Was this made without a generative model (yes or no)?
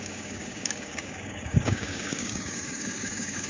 no